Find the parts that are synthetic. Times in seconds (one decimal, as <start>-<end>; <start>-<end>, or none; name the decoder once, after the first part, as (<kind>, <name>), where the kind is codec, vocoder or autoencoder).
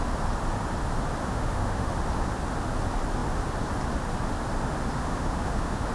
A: 1.2-1.9 (autoencoder, DAC-VAE); 5.0-5.9